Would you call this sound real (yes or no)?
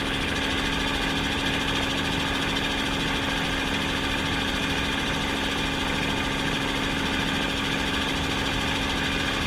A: yes